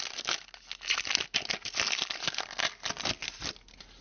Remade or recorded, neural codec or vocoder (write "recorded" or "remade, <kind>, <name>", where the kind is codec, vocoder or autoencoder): recorded